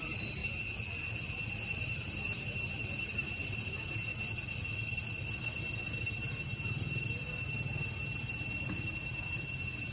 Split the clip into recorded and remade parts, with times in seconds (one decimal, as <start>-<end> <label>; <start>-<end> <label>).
0.0-0.4 remade; 0.4-1.5 recorded; 1.5-4.1 remade; 4.1-6.2 recorded; 6.2-9.9 remade